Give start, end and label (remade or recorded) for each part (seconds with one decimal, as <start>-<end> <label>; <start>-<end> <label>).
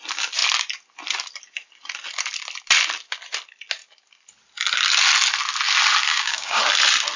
0.0-6.1 recorded; 6.1-6.6 remade; 6.6-7.2 recorded